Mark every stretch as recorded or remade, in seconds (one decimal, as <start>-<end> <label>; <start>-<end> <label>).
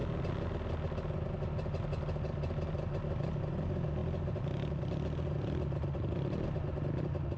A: 0.0-7.4 recorded